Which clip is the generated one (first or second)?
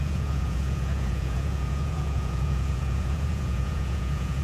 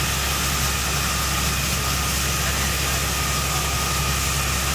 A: first